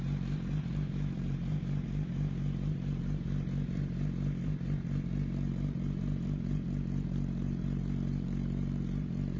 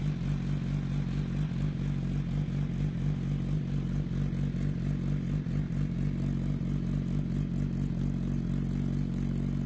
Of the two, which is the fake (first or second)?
first